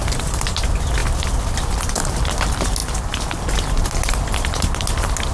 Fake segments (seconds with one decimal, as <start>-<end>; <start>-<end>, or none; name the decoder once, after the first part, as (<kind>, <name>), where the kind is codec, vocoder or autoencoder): none